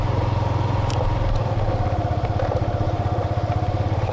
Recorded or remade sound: remade